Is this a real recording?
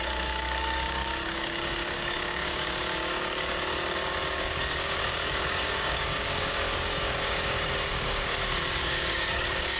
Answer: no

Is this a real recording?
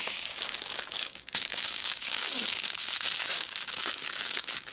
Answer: no